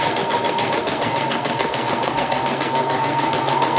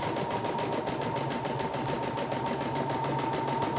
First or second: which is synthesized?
first